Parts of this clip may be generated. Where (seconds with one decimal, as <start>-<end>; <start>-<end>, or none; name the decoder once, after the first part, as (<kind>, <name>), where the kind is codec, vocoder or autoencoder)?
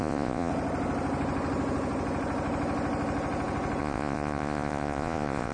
0.0-0.5 (vocoder, Vocos); 3.8-5.5